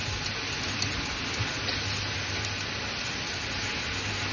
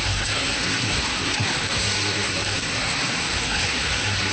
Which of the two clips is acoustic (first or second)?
first